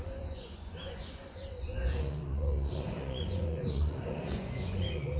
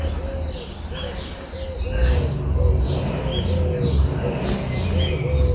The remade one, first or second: first